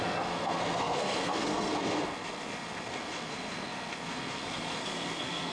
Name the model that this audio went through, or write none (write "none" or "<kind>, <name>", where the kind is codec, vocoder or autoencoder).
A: codec, SNAC